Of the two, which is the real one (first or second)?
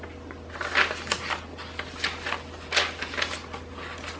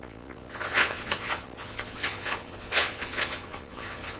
first